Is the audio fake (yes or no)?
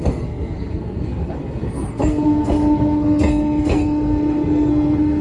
yes